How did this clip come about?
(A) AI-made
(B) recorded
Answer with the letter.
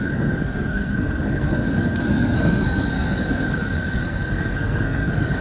A